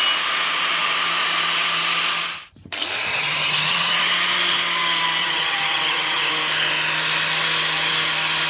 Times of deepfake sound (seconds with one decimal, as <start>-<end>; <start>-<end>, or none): 3.1-4.0; 5.2-6.3